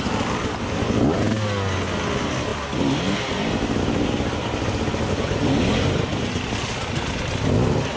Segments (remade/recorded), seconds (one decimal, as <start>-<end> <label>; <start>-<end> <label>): 0.0-8.0 recorded

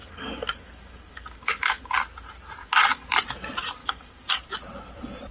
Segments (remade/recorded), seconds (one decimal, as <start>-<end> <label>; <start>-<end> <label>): 0.0-1.9 remade; 1.9-2.6 recorded; 2.6-3.1 remade; 3.1-3.8 recorded; 3.8-4.4 remade; 4.4-5.3 recorded

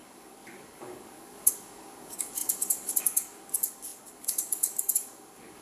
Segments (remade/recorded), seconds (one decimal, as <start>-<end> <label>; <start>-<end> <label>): 0.0-5.6 remade

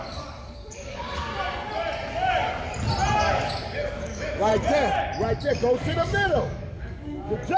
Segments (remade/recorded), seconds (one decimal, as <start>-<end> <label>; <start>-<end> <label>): 0.0-1.3 remade; 1.3-3.3 recorded; 3.3-4.5 remade; 4.5-5.5 recorded; 5.5-7.6 remade

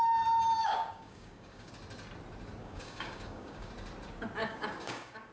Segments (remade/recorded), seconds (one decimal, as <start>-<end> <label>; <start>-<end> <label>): 0.0-0.6 recorded; 0.6-1.7 remade; 1.7-2.6 recorded; 2.6-3.7 remade; 3.7-4.4 recorded; 4.4-5.3 remade

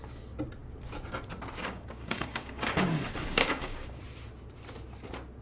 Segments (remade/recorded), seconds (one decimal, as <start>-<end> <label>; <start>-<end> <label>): 0.0-1.6 recorded; 1.6-4.0 remade; 4.0-5.4 recorded

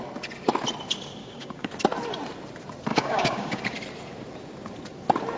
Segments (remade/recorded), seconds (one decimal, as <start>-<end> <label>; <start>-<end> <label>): 0.0-1.2 recorded; 1.2-1.7 remade; 1.7-2.9 recorded; 2.9-3.6 remade; 3.6-5.4 recorded